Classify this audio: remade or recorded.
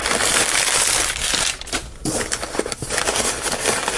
recorded